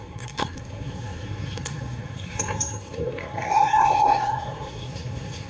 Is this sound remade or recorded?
remade